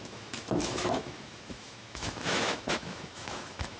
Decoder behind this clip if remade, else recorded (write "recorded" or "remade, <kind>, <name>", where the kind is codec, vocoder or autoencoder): remade, autoencoder, DAC-VAE